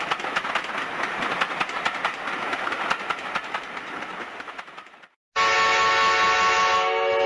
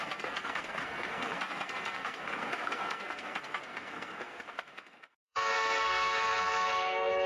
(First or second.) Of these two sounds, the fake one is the second